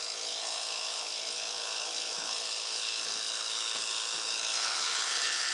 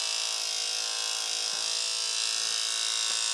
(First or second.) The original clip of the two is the second